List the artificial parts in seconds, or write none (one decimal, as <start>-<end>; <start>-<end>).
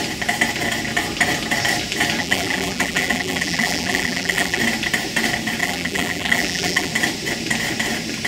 2.2-4.6; 5.6-6.9